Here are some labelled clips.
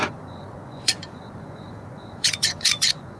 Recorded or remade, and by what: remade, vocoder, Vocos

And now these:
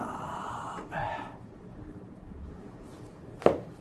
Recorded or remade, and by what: recorded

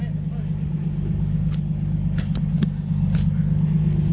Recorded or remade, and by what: recorded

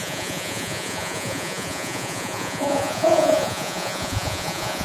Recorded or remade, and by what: remade, vocoder, Vocos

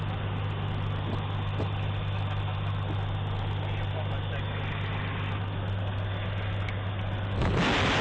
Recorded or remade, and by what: recorded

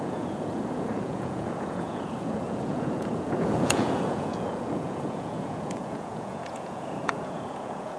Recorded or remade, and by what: remade, vocoder, Vocos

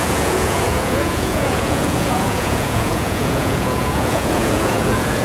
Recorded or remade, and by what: remade, vocoder, Vocos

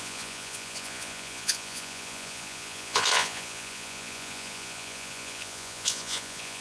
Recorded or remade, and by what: remade, vocoder, Vocos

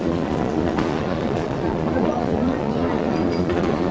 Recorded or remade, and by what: remade, vocoder, Vocos